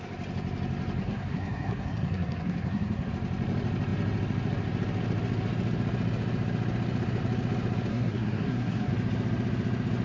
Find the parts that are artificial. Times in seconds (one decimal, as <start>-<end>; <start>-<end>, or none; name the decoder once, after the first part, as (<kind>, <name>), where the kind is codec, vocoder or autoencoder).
1.0-3.1 (codec, SNAC); 7.9-8.9